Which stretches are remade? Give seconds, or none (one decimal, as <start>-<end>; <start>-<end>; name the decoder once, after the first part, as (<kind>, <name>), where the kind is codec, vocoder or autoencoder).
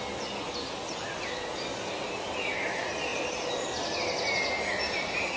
none